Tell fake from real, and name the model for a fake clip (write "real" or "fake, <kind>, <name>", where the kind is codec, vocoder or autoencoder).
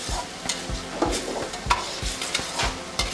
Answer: real